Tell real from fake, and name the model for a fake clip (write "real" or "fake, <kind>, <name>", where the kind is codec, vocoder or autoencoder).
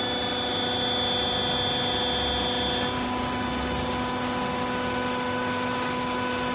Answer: real